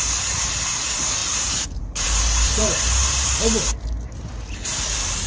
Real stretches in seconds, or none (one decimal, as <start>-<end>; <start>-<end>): 0.0-1.2; 3.4-5.3

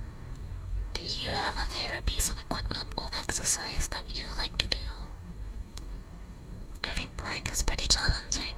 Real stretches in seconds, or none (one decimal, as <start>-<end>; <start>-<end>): none

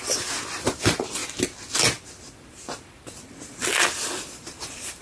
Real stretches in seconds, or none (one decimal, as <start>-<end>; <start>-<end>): 1.2-4.2

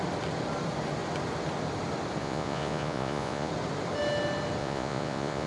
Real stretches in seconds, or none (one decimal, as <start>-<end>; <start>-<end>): 0.0-2.2; 3.5-4.6

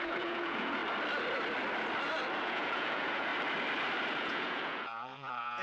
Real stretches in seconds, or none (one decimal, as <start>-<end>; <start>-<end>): 0.8-2.4; 3.3-4.1

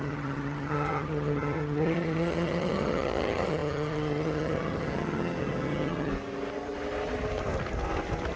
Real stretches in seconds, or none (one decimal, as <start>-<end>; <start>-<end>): 6.1-8.4